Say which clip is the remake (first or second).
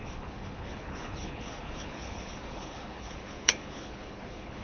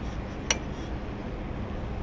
first